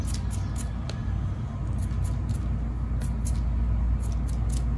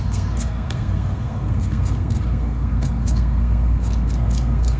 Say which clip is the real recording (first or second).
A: first